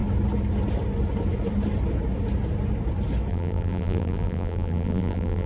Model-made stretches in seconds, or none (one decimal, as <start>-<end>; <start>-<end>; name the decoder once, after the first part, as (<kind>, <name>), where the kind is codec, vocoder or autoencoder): 3.3-5.5 (vocoder, BigVGAN v2)

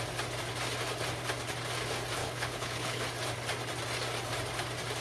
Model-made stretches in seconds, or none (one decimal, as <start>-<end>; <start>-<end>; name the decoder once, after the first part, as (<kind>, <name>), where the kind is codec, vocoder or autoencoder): 2.2-3.0 (codec, HILCodec)

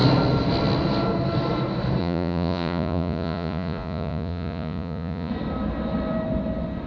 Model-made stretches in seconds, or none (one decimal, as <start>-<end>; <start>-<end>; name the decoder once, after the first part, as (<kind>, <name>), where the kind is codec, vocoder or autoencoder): 2.0-5.3 (vocoder, Vocos)

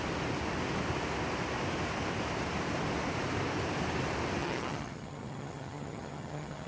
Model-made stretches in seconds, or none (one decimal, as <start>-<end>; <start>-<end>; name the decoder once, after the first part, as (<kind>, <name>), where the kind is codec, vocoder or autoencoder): 4.4-6.7 (vocoder, HiFi-GAN)

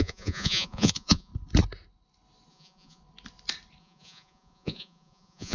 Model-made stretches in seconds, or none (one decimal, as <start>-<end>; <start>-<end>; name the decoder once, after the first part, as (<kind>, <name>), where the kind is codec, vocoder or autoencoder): 0.0-1.3 (vocoder, Vocos); 2.5-3.0; 3.8-5.5

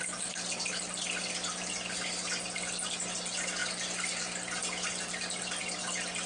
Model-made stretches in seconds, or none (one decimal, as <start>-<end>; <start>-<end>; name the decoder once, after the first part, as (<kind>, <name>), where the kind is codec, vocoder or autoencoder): none

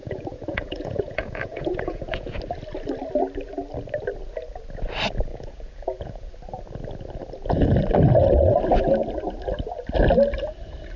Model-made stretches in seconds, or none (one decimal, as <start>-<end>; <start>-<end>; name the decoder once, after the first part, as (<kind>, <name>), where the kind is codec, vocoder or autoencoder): 0.0-2.4 (vocoder, Vocos); 5.3-6.3

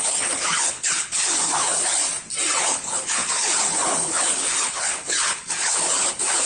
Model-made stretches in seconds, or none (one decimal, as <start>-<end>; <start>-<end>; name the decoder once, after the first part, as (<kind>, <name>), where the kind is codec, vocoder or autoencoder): 0.0-2.0 (codec, HILCodec); 2.6-6.5